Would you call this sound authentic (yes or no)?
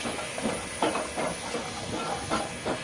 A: yes